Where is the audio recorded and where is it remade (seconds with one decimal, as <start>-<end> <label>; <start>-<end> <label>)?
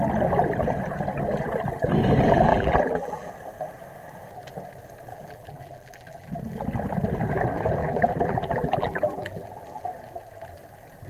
0.0-2.5 recorded; 2.5-3.3 remade; 3.3-5.1 recorded; 5.1-6.3 remade; 6.3-7.8 recorded; 7.8-9.8 remade; 9.8-11.1 recorded